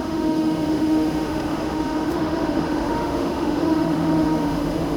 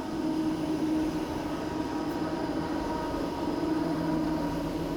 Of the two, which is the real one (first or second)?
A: second